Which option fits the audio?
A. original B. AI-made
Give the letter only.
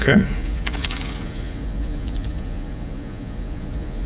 B